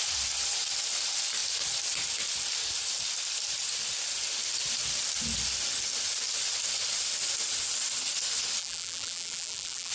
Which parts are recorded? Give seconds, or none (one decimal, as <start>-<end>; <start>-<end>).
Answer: 0.0-8.6